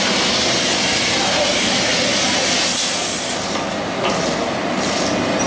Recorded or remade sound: recorded